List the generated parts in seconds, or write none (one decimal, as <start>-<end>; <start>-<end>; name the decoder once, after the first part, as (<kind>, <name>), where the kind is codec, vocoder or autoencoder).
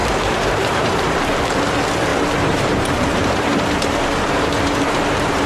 0.0-1.0 (vocoder, BigVGAN v2); 2.1-5.5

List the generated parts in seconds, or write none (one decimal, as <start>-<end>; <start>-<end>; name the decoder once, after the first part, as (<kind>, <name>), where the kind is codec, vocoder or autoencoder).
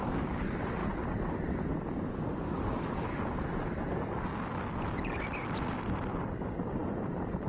0.0-0.8 (vocoder, BigVGAN v2); 3.5-4.3; 6.2-7.5